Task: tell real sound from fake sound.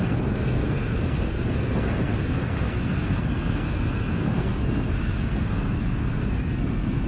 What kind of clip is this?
fake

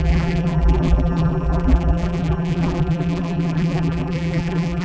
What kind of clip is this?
fake